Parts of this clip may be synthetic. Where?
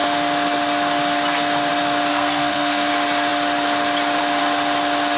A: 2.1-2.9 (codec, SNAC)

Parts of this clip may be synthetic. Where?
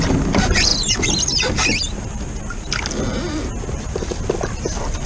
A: none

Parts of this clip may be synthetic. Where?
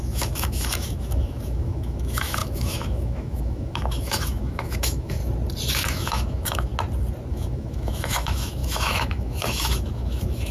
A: 0.0-5.2 (autoencoder, DAC-VAE); 5.7-6.7; 7.3-10.5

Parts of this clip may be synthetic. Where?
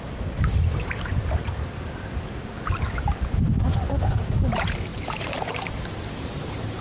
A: 0.5-3.4 (vocoder, BigVGAN v2); 4.9-6.3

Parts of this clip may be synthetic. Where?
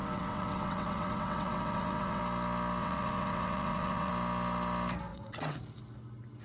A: 0.0-2.2 (vocoder, WaveNeXt); 2.8-4.1; 5.1-5.6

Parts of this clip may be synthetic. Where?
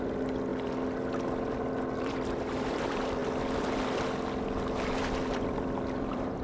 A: 0.0-0.5 (vocoder, BigVGAN v2); 2.0-3.2; 5.0-6.4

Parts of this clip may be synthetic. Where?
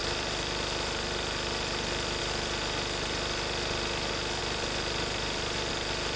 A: none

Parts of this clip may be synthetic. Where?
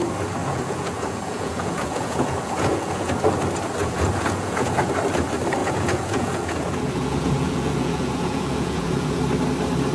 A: 0.4-3.1 (vocoder, Vocos); 3.8-4.9; 5.6-9.2